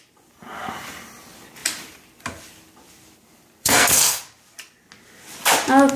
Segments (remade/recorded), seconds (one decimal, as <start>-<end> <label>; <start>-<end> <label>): 0.0-3.6 recorded; 3.6-4.2 remade; 4.2-6.0 recorded